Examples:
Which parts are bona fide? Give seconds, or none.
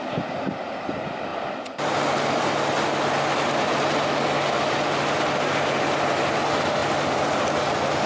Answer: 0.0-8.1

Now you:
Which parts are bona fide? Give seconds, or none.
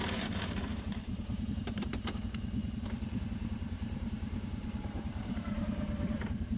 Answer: none